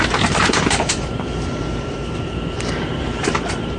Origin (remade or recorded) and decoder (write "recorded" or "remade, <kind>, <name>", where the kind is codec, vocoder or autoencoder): remade, vocoder, BigVGAN v2